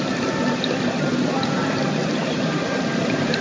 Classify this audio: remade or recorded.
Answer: recorded